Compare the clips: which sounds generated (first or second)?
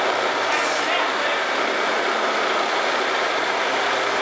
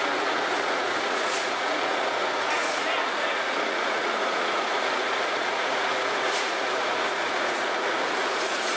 second